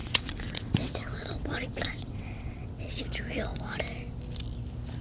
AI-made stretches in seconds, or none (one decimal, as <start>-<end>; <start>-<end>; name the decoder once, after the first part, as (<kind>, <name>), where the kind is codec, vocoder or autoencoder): 0.0-3.0 (vocoder, WaveNeXt)